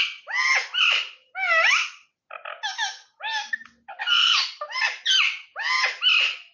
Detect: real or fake real